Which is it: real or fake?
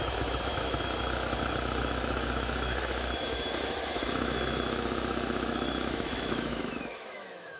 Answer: fake